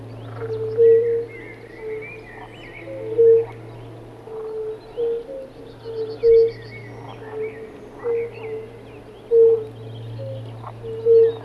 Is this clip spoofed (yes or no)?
no